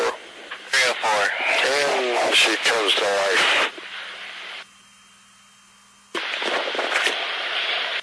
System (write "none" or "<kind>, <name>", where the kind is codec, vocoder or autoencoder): none